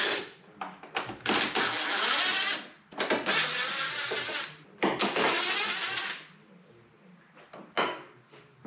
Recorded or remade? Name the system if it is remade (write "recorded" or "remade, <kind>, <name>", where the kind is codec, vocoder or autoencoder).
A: recorded